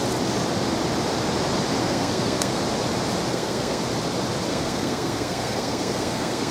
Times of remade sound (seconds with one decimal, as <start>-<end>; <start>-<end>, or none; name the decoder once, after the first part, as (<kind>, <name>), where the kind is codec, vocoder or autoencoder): 1.8-2.6 (codec, SNAC); 3.3-3.8; 4.5-6.5